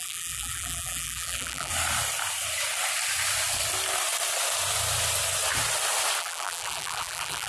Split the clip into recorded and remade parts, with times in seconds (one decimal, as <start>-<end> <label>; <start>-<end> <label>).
0.0-1.7 remade; 1.7-6.2 recorded; 6.2-7.5 remade

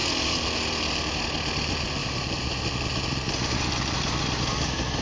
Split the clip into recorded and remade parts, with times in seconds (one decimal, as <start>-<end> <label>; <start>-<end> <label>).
0.0-1.0 remade; 1.0-2.0 recorded; 2.0-5.0 remade